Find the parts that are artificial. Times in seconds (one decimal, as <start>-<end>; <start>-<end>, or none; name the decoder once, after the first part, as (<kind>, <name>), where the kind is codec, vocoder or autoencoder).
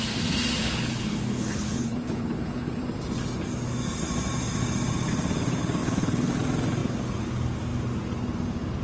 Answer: 0.6-2.8 (codec, HILCodec); 5.8-6.3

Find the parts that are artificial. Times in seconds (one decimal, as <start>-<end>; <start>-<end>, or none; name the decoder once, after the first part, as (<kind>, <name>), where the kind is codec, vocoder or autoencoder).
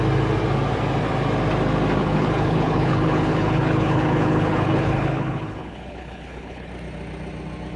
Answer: 2.0-6.7 (codec, HILCodec)